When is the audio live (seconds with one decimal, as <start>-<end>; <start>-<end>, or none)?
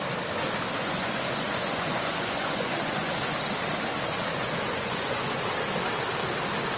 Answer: 0.0-0.8; 3.1-4.3; 5.5-6.8